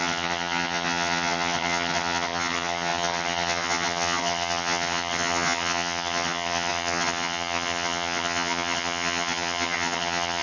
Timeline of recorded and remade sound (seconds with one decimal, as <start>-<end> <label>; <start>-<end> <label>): 0.0-10.4 remade